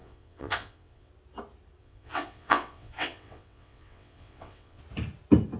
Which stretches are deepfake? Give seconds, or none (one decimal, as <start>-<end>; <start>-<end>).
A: 0.0-1.1; 1.8-4.8